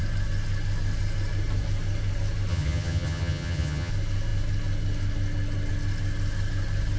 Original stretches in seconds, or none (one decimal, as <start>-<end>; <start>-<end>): 0.0-2.5; 3.9-7.0